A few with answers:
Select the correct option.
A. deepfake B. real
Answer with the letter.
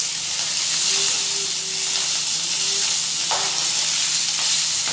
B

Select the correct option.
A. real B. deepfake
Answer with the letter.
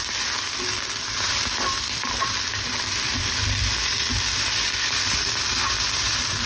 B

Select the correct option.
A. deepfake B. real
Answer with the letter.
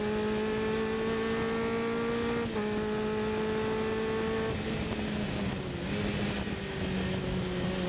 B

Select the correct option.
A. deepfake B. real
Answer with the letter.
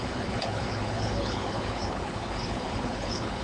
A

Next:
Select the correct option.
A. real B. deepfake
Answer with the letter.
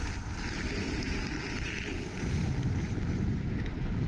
B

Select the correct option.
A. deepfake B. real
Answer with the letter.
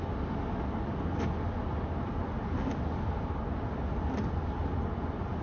B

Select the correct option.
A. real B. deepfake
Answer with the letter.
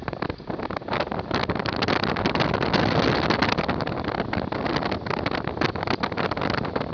A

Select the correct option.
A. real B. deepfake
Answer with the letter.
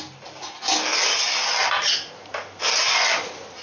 A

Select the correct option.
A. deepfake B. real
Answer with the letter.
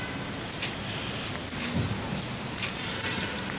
B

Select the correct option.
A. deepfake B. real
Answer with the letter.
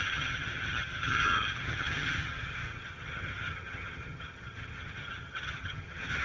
A